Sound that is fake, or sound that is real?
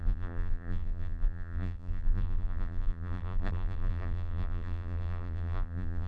fake